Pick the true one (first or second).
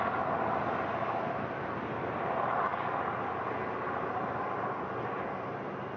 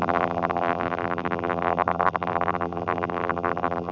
first